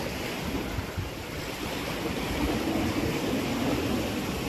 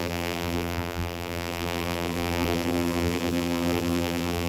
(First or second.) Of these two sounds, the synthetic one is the second